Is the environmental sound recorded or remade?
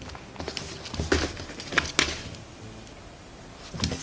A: recorded